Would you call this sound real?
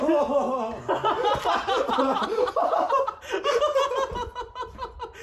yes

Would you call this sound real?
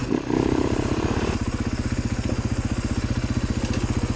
yes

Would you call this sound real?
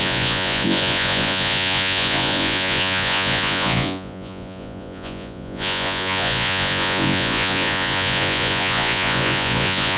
no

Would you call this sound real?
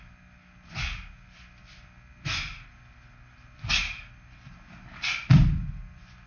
yes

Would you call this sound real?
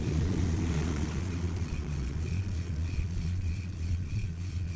no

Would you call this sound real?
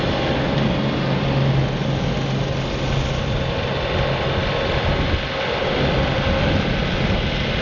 yes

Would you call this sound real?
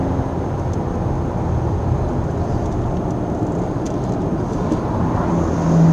yes